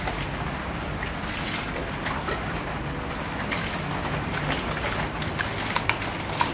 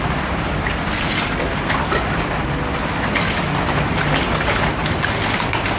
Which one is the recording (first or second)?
first